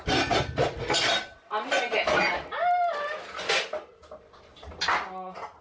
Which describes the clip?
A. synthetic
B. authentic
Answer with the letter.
B